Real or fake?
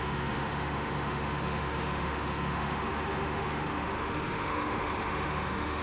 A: fake